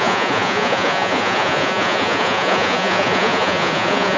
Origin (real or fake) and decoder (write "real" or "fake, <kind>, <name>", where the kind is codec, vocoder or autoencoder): fake, vocoder, Vocos